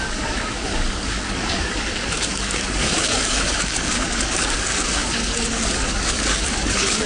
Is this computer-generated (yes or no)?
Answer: yes